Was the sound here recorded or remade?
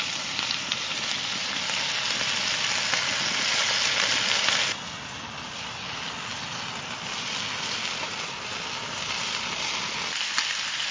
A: recorded